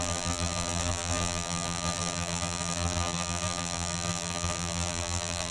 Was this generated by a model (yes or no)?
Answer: yes